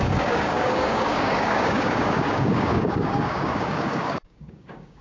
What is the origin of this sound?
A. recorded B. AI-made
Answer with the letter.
B